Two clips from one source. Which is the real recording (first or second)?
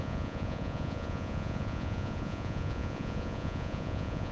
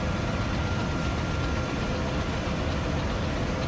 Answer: second